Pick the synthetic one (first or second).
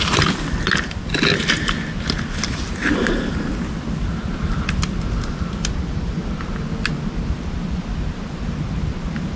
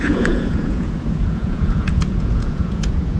second